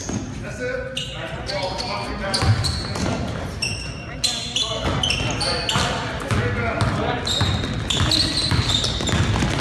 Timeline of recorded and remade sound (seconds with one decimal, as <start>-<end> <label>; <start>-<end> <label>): 0.0-9.6 recorded